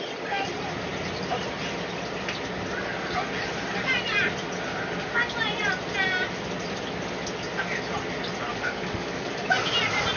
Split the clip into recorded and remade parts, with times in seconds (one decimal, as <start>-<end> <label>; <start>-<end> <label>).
0.0-8.5 recorded; 8.5-9.5 remade; 9.5-10.2 recorded